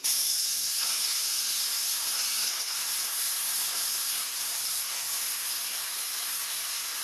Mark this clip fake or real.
fake